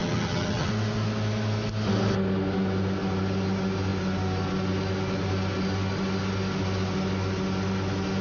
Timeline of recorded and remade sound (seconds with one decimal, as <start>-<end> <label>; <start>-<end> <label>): 0.0-0.7 remade; 0.7-8.2 recorded